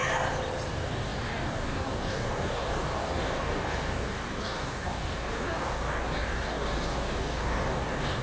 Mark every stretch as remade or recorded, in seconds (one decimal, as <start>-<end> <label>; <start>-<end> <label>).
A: 0.0-0.7 recorded; 0.7-8.2 remade